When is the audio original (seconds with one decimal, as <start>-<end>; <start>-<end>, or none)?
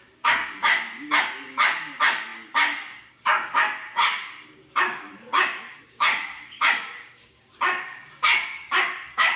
none